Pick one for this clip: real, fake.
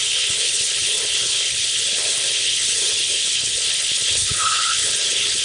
fake